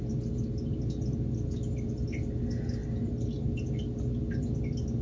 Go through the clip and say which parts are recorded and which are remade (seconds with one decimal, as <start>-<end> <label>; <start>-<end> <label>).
0.0-5.0 recorded